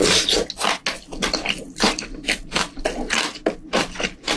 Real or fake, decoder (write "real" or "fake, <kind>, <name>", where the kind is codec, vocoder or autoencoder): real